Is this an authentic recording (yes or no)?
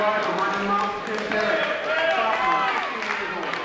yes